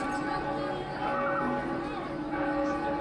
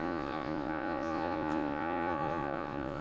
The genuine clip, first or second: first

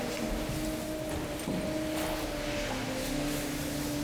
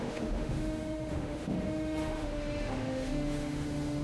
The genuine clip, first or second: first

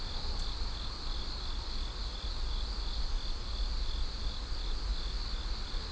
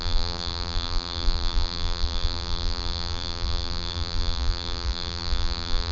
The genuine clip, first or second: first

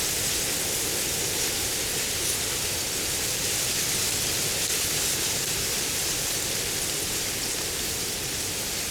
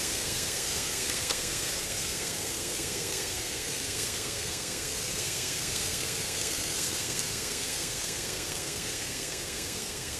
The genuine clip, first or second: first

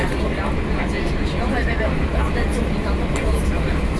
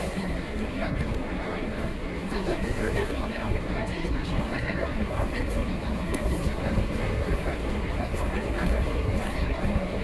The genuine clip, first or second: first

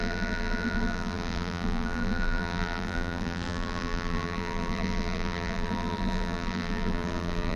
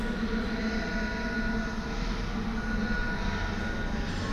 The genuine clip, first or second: second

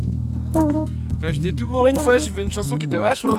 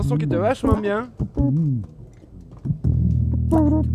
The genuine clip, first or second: second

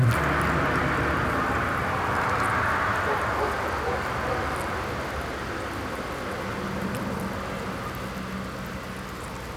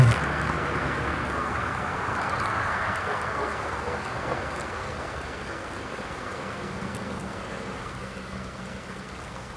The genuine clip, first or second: first